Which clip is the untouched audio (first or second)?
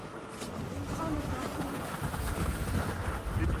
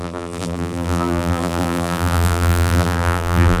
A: first